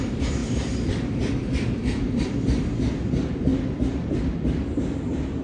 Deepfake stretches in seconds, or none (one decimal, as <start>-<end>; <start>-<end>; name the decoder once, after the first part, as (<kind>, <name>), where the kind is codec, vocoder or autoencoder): 0.4-2.3 (vocoder, BigVGAN v2); 3.5-4.1